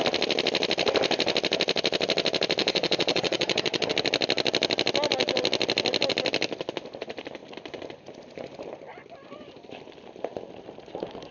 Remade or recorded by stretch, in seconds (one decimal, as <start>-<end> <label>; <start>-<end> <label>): 0.0-2.6 recorded; 2.6-3.9 remade; 3.9-11.3 recorded